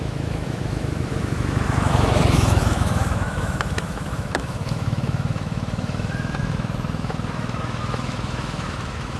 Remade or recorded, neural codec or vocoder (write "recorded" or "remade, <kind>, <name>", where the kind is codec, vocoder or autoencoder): remade, autoencoder, DAC-VAE